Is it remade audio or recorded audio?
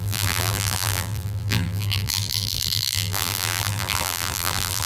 remade